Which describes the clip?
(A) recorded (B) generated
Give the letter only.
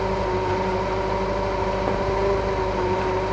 A